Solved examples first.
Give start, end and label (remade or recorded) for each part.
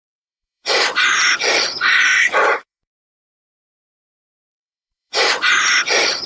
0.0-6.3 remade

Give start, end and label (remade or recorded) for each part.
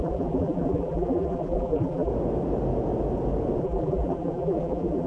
0.0-2.1 remade; 2.1-3.6 recorded; 3.6-5.1 remade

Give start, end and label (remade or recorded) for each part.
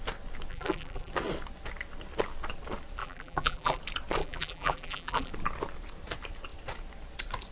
0.0-0.5 recorded; 0.5-1.1 remade; 1.1-3.0 recorded; 3.0-3.8 remade; 3.8-4.2 recorded; 4.2-5.3 remade; 5.3-7.5 recorded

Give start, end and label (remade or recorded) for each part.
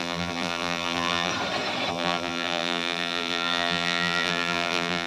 0.0-1.3 remade; 1.3-1.9 recorded; 1.9-5.1 remade